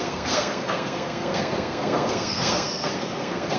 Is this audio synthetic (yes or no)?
yes